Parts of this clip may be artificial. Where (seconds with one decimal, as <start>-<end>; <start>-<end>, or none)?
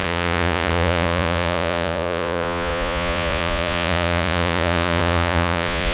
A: 0.0-5.9